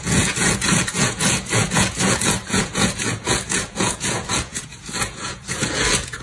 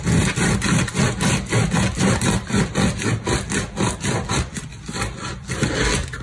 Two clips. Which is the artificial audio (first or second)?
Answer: first